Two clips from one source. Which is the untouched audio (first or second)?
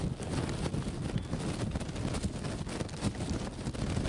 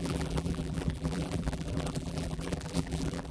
first